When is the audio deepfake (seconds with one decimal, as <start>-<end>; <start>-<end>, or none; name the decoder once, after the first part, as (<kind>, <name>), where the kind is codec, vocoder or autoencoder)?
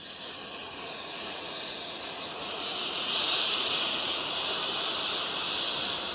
0.6-4.3 (vocoder, Vocos)